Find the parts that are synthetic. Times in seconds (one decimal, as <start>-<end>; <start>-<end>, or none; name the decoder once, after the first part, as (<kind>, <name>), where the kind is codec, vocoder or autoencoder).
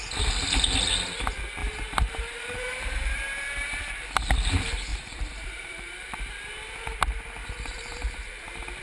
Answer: 1.6-3.1 (vocoder, BigVGAN v2); 4.9-6.3; 7.4-8.3